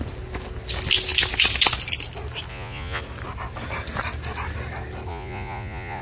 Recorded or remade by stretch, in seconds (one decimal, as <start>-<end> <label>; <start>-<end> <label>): 0.0-2.5 recorded; 2.5-3.0 remade; 3.0-5.1 recorded; 5.1-6.0 remade